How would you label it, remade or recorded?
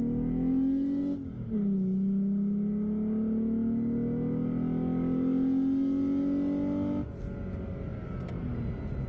recorded